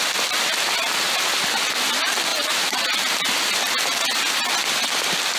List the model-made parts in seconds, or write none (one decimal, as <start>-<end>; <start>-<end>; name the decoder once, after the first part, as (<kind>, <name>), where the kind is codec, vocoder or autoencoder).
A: 2.3-2.9 (vocoder, BigVGAN v2)